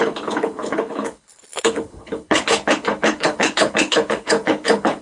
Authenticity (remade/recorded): remade